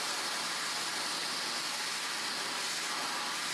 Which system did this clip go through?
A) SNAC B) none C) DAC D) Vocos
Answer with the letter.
B